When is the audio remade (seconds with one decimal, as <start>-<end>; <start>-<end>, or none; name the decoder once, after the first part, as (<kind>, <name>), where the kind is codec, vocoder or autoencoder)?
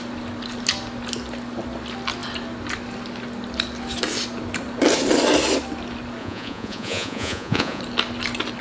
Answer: 6.2-7.8 (vocoder, Vocos)